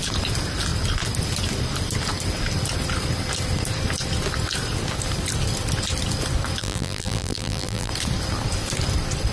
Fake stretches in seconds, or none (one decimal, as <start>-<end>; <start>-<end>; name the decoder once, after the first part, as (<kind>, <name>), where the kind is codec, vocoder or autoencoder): 6.6-7.9 (vocoder, BigVGAN v2)